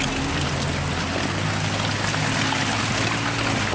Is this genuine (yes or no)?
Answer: yes